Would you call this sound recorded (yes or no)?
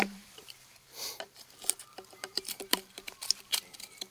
no